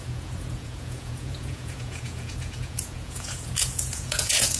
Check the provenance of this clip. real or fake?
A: fake